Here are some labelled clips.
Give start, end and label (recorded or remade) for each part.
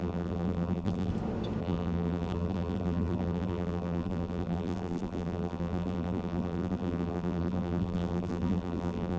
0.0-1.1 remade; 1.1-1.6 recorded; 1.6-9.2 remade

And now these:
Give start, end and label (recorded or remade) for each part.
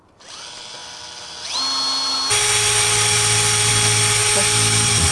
0.0-5.1 recorded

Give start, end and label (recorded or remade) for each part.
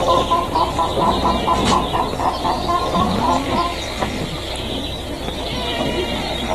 0.0-6.5 recorded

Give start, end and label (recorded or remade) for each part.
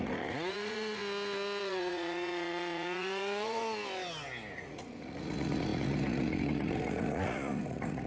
0.0-1.0 remade; 1.0-1.6 recorded; 1.6-3.6 remade; 3.6-4.5 recorded; 4.5-8.1 remade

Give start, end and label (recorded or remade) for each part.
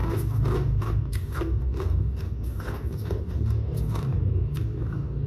0.0-5.3 remade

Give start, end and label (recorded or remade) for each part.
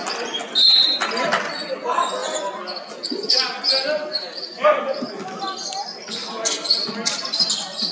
0.0-7.9 recorded